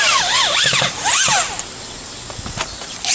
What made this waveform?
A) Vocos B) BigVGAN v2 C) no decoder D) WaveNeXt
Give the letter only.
C